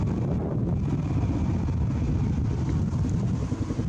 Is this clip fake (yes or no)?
no